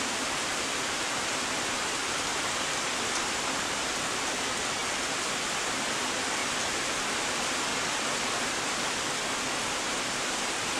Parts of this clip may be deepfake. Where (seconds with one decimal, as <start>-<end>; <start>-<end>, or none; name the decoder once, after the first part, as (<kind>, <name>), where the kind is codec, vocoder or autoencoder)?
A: 0.0-4.8 (vocoder, BigVGAN v2); 5.6-6.4; 7.3-7.7; 9.5-10.8